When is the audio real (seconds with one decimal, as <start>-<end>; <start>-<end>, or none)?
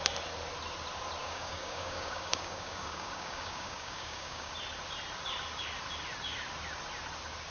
0.0-1.2; 4.5-7.5